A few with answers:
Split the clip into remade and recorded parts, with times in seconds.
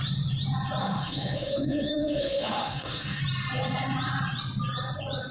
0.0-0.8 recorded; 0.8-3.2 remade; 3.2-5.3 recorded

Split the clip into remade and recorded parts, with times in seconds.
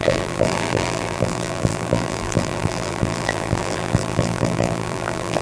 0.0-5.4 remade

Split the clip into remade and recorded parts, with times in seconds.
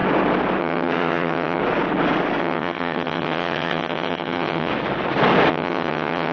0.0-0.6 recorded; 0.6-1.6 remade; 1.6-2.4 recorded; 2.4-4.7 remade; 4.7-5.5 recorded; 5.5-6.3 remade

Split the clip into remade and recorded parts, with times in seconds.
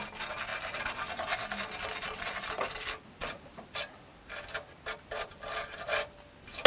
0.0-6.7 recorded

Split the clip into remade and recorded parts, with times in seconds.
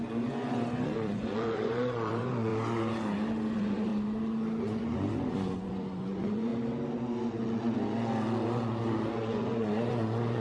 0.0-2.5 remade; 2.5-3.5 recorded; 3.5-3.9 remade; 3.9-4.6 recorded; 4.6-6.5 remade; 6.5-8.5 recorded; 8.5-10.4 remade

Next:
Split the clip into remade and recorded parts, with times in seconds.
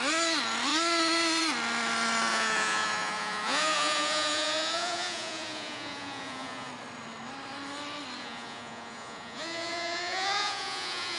0.0-2.3 recorded; 2.3-6.7 remade; 6.7-8.2 recorded; 8.2-11.2 remade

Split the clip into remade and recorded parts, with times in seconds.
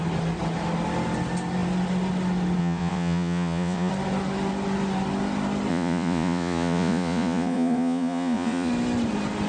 0.0-2.6 recorded; 2.6-3.9 remade; 3.9-5.7 recorded; 5.7-8.7 remade; 8.7-9.5 recorded